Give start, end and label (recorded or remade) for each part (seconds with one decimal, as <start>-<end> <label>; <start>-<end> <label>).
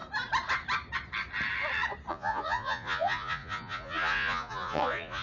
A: 0.0-2.1 recorded; 2.1-5.2 remade